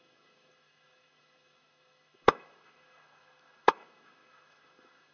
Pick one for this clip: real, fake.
fake